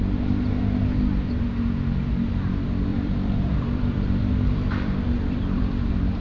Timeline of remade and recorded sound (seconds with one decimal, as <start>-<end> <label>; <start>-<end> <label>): 0.0-2.9 recorded; 2.9-5.8 remade; 5.8-6.2 recorded